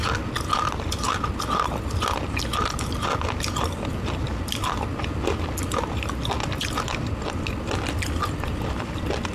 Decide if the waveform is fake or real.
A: real